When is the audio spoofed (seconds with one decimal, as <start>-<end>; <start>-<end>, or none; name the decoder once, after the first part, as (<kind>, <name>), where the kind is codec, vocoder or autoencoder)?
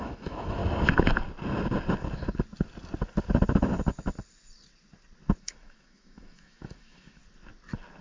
0.0-0.6 (autoencoder, DAC-VAE); 5.4-7.2